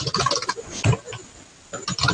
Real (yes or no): yes